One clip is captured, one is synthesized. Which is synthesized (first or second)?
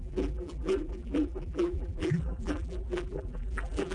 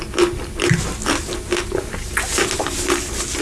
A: first